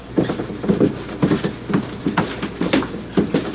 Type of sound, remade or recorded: recorded